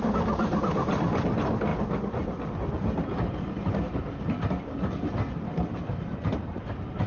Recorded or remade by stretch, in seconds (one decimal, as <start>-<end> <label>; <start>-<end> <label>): 0.0-7.1 recorded